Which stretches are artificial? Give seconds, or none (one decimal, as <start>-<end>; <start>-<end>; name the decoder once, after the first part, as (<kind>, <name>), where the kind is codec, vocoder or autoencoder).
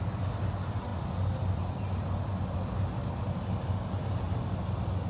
none